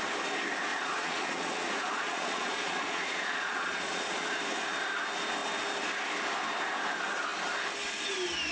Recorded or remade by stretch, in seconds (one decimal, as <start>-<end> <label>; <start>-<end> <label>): 0.0-0.7 recorded; 0.7-4.4 remade; 4.4-8.5 recorded